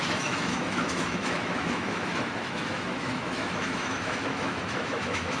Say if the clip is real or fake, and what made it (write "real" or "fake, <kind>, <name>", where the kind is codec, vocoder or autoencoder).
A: fake, autoencoder, DAC-VAE